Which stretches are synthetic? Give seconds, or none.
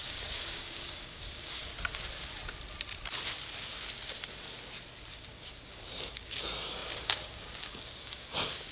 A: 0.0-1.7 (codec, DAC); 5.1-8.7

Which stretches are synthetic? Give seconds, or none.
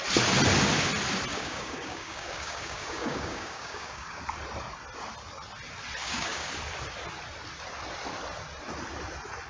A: 1.3-4.2 (codec, DAC); 6.0-6.5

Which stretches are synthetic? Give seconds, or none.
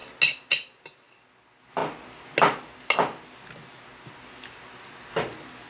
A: none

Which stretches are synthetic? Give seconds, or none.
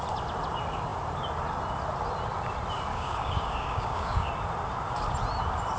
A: 2.9-4.3 (codec, DAC)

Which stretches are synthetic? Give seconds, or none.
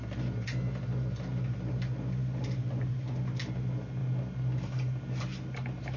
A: none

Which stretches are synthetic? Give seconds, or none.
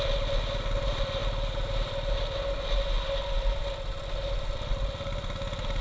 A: none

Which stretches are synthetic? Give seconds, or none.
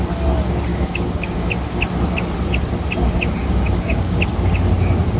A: 0.7-1.5 (codec, DAC); 3.4-4.2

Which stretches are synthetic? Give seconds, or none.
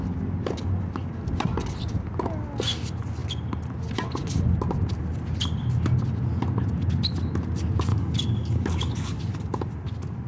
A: 7.9-9.2 (codec, DAC)